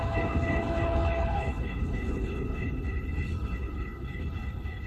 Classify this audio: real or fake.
fake